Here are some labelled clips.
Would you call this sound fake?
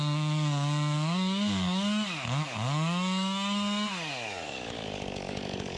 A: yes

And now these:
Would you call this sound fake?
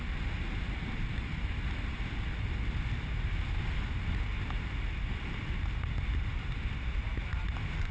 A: no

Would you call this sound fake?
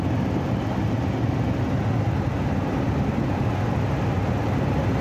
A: no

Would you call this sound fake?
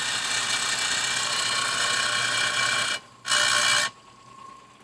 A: no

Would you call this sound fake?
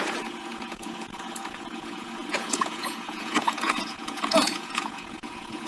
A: yes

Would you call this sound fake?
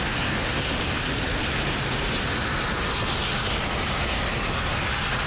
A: no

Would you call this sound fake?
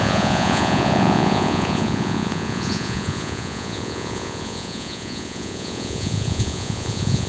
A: yes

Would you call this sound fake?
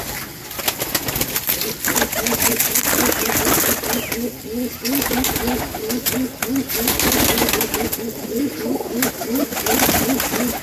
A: no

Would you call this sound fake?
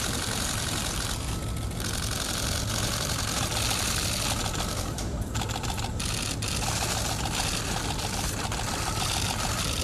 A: no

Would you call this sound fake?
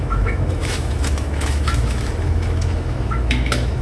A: yes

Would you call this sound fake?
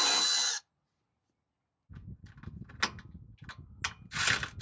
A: no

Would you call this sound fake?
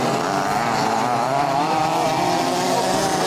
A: no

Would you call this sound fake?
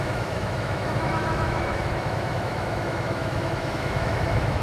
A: yes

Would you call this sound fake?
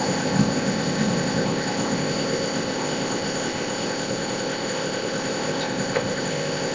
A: yes